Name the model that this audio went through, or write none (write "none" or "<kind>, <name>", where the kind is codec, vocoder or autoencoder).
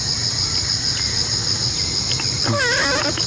none